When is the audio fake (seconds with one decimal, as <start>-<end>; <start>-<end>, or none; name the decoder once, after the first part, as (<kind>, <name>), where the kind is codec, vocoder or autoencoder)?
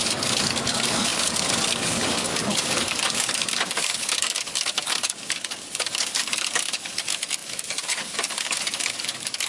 0.0-9.5 (codec, DAC)